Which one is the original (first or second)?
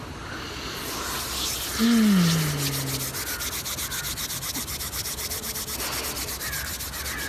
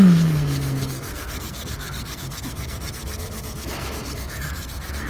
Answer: first